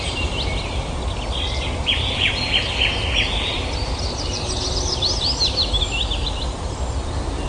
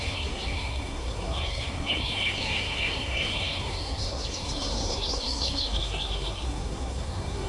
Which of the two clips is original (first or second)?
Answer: first